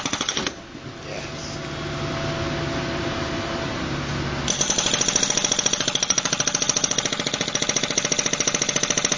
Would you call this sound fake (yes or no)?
no